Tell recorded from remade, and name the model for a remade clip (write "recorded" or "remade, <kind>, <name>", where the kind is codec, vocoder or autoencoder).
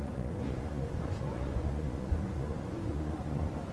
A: remade, vocoder, Vocos